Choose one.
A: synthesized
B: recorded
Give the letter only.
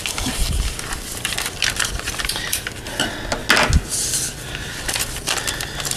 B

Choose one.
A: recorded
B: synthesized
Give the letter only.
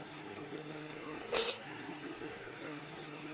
B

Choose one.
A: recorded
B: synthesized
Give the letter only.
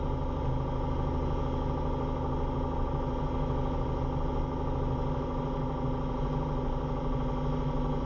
A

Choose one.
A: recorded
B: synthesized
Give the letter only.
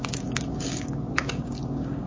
B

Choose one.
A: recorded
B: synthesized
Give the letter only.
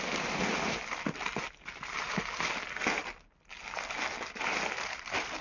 A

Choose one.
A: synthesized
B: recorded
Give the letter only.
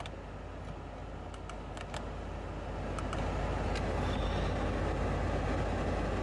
B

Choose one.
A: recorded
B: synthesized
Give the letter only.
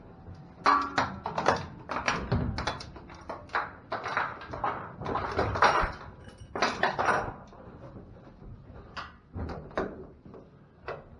A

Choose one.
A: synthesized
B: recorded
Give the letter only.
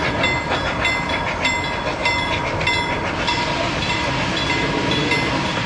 B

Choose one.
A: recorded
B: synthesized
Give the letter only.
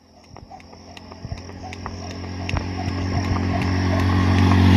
A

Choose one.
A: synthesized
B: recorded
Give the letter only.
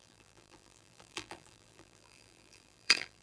A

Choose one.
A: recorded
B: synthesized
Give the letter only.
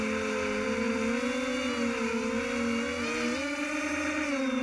A